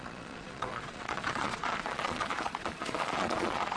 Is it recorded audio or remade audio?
remade